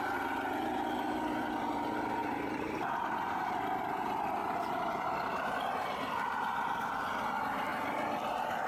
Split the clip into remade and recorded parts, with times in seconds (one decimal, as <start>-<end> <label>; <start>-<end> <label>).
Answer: 0.0-2.2 recorded; 2.2-2.9 remade; 2.9-4.4 recorded; 4.4-5.6 remade; 5.6-8.7 recorded